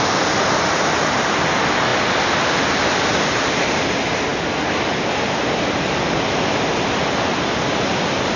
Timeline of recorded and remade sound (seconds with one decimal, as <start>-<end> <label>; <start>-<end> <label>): 0.0-8.4 recorded